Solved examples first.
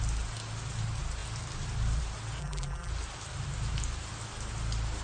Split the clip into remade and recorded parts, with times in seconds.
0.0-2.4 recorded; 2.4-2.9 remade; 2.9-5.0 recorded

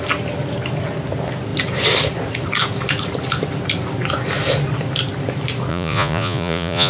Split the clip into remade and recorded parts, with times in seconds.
0.0-5.7 recorded; 5.7-6.9 remade

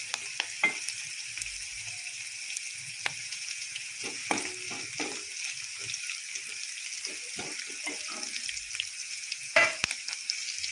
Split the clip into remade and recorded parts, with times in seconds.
0.0-3.2 recorded; 3.2-4.3 remade; 4.3-9.0 recorded; 9.0-9.9 remade; 9.9-10.7 recorded

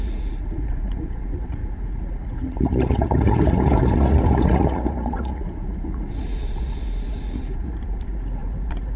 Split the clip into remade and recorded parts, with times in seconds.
0.0-9.0 remade